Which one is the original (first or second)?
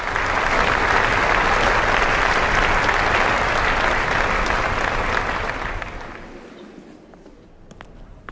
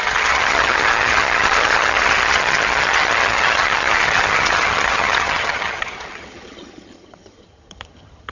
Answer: first